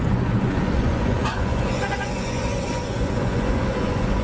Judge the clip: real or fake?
fake